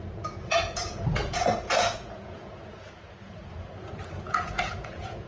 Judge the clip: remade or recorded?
remade